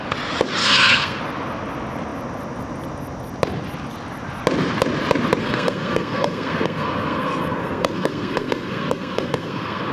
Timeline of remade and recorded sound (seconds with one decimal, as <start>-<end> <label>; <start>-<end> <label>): 0.0-0.6 recorded; 0.6-1.2 remade; 1.2-5.4 recorded; 5.4-9.9 remade